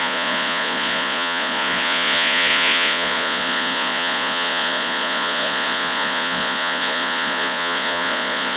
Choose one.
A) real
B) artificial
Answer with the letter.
B